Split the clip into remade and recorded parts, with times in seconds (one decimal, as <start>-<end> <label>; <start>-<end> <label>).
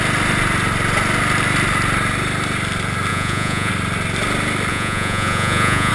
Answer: 0.0-3.1 recorded; 3.1-3.7 remade; 3.7-4.7 recorded; 4.7-5.9 remade